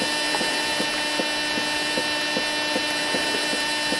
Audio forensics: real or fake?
real